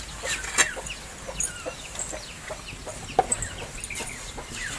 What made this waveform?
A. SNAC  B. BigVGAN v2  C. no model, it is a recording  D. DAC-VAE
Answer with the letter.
C